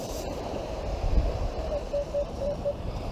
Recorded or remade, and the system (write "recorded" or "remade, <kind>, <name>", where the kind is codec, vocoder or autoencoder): remade, vocoder, BigVGAN v2